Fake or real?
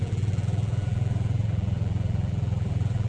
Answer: fake